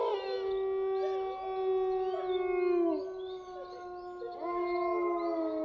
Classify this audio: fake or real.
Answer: real